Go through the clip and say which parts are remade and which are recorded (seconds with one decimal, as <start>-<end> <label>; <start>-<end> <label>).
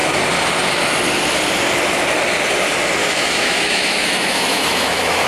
0.0-3.0 recorded; 3.0-5.3 remade